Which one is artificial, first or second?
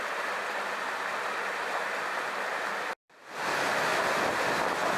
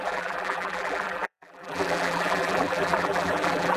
second